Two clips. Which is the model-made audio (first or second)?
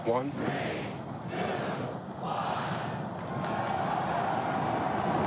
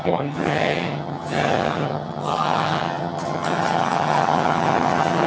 second